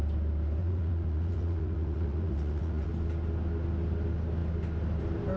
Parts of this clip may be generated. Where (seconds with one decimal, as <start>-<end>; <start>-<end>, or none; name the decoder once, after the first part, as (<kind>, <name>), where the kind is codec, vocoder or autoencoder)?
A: 0.6-2.9 (vocoder, Vocos)